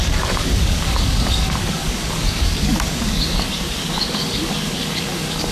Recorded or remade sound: remade